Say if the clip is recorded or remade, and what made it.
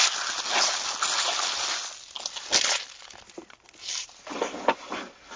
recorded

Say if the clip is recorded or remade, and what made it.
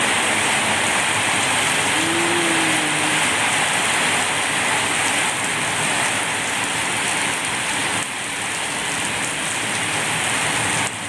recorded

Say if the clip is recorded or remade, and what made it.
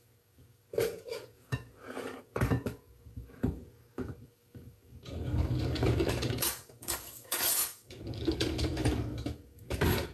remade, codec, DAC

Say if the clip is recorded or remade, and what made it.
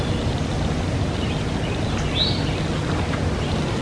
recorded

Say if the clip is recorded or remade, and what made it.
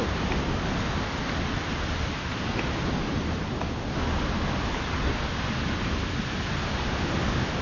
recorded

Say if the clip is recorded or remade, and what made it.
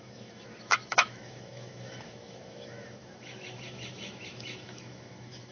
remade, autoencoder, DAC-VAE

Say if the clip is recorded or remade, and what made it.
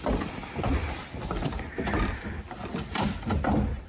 recorded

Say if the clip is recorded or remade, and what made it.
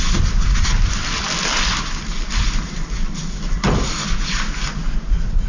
recorded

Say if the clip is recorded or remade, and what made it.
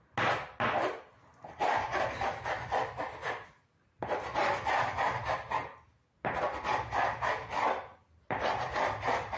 recorded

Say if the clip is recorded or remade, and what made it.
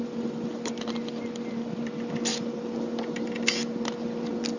recorded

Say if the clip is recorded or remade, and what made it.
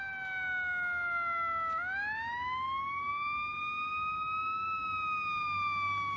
recorded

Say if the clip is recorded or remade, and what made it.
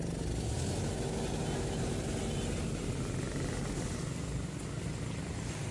recorded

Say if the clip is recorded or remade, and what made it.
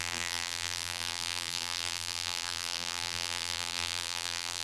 remade, vocoder, BigVGAN v2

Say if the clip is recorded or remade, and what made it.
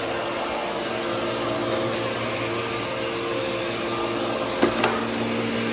recorded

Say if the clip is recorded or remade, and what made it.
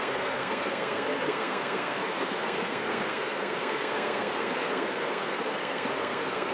remade, codec, SNAC